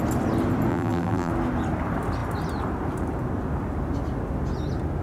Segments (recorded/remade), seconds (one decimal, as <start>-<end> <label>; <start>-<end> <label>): 0.0-0.7 recorded; 0.7-1.3 remade; 1.3-5.0 recorded